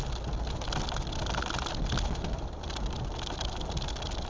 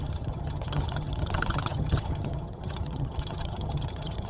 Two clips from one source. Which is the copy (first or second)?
second